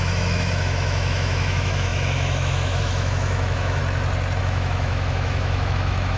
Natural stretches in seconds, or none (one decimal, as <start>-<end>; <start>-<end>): 3.8-4.4